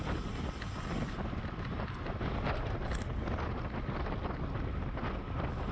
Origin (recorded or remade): recorded